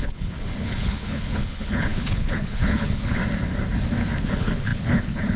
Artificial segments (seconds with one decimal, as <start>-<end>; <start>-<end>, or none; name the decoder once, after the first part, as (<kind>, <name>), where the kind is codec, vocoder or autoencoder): 0.0-3.2 (codec, HILCodec); 4.2-5.4